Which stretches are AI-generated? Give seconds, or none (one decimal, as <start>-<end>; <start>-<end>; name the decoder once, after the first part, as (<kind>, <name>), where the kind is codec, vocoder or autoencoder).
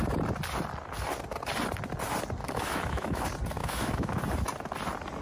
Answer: 2.4-3.2 (autoencoder, DAC-VAE); 3.6-4.2